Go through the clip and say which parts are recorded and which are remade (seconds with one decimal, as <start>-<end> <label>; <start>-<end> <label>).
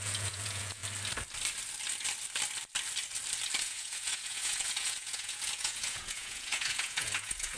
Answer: 0.0-0.8 remade; 0.8-3.6 recorded; 3.6-7.6 remade